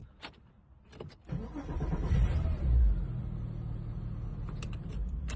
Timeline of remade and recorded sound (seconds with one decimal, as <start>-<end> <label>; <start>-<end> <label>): 0.0-3.2 remade; 3.2-4.3 recorded; 4.3-5.4 remade